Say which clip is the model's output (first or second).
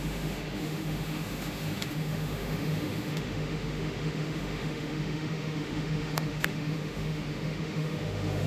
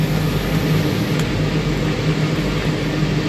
first